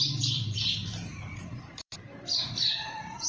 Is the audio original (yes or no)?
no